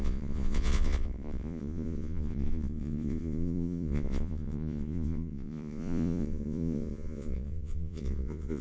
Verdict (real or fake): fake